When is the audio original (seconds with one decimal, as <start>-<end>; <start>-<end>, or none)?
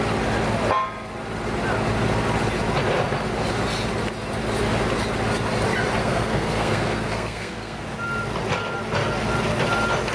0.0-6.0; 7.8-10.1